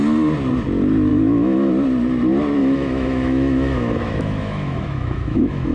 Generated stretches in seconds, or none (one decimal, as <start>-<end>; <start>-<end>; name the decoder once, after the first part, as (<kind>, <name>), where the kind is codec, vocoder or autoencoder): 1.1-1.7 (autoencoder, DAC-VAE); 2.6-5.7